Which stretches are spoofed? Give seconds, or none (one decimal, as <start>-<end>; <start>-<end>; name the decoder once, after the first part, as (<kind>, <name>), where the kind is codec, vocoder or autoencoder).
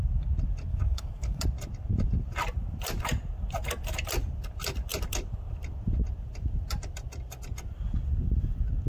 0.7-1.4 (codec, DAC)